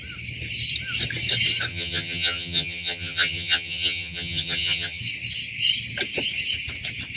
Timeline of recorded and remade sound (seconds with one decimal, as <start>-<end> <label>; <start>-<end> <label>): 0.0-1.7 recorded; 1.7-5.0 remade; 5.0-7.2 recorded